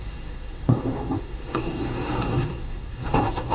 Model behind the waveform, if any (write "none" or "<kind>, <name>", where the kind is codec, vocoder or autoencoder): codec, SNAC